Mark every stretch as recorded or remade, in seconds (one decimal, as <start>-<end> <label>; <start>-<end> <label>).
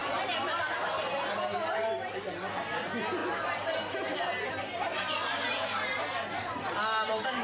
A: 0.0-7.4 recorded